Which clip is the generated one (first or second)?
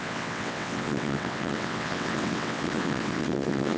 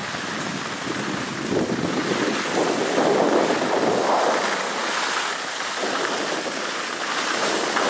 first